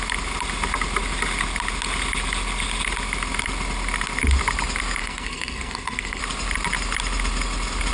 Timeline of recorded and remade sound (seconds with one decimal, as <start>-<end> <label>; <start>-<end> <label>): 0.0-5.0 recorded; 5.0-6.2 remade; 6.2-7.9 recorded